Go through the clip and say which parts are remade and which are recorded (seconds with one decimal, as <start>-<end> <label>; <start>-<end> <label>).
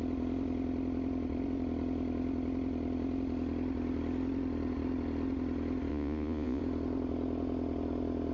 0.0-5.9 recorded; 5.9-6.6 remade; 6.6-8.3 recorded